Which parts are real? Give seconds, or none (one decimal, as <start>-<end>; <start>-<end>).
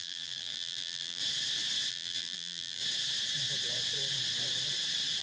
1.2-1.9; 2.8-5.2